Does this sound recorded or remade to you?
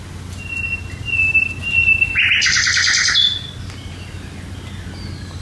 recorded